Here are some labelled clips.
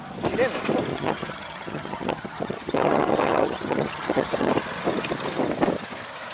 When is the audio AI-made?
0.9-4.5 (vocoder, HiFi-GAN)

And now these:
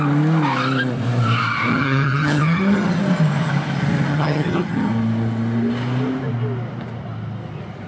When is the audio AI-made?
1.7-3.0 (vocoder, HiFi-GAN); 4.1-4.9

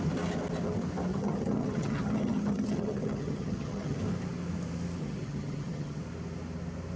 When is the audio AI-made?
1.1-4.0 (vocoder, HiFi-GAN); 5.0-6.0

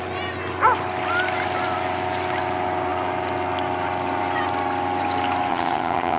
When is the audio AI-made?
5.5-6.2 (vocoder, HiFi-GAN)